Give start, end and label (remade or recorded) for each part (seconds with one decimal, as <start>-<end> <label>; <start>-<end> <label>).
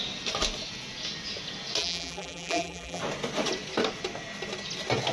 0.0-1.8 recorded; 1.8-3.0 remade; 3.0-5.1 recorded